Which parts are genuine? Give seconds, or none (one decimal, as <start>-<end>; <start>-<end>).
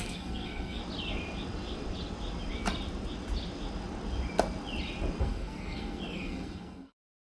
0.8-5.2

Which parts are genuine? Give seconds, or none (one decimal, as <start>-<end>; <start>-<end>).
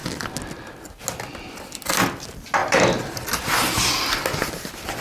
0.0-5.0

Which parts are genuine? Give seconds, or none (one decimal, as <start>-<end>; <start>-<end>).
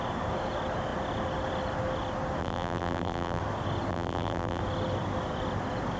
0.0-2.4; 3.4-3.9; 4.6-6.0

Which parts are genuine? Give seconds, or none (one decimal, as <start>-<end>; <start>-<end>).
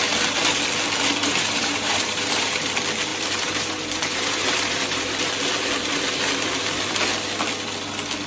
0.0-1.2; 2.7-3.1; 5.3-8.3